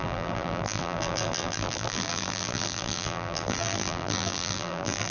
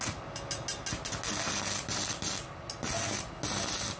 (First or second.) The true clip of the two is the second